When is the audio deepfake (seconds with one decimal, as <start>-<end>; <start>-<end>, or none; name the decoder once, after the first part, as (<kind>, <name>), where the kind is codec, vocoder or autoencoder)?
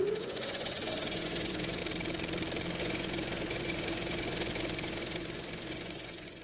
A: 0.0-1.8 (vocoder, Vocos); 2.8-6.4